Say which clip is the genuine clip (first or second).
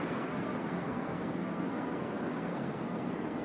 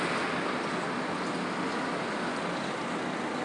second